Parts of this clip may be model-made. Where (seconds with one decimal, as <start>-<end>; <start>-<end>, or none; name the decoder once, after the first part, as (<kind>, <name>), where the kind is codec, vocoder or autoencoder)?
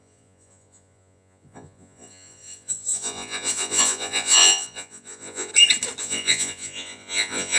0.0-5.5 (vocoder, Vocos); 6.0-7.6